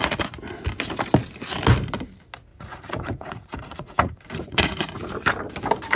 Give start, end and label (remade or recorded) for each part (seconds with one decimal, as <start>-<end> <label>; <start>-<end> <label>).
0.0-2.5 recorded; 2.5-5.1 remade; 5.1-6.0 recorded